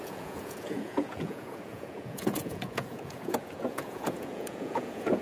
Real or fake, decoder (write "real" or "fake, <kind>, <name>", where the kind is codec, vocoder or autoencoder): fake, vocoder, Vocos